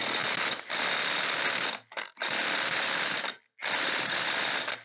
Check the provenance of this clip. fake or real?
real